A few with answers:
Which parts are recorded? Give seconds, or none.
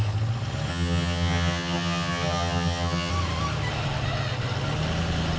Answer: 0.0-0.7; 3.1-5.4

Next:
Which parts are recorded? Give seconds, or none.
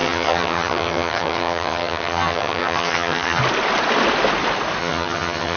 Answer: 3.4-4.8